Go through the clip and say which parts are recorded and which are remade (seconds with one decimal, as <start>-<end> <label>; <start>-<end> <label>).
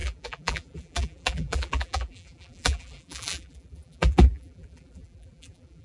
0.0-5.8 remade